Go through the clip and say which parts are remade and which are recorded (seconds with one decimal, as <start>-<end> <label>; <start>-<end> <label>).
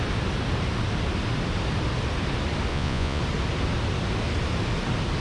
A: 0.0-2.7 recorded; 2.7-3.2 remade; 3.2-5.2 recorded